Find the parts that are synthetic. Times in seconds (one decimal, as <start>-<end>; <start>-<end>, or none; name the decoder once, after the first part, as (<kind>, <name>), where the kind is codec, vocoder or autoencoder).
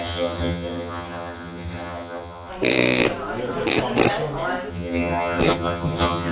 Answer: 0.0-2.5 (vocoder, HiFi-GAN); 4.7-6.3